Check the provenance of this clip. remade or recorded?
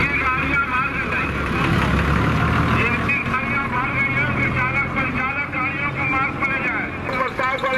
recorded